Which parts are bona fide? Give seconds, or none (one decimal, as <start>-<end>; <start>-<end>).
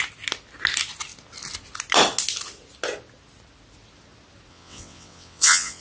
0.0-4.5